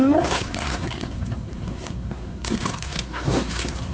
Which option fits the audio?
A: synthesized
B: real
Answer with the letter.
A